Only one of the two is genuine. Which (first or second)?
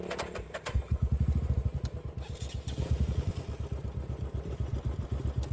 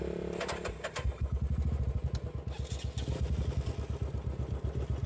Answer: second